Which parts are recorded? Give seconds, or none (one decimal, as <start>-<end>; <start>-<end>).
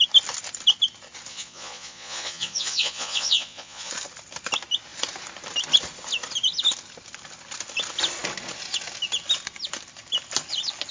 0.0-1.3; 3.9-10.9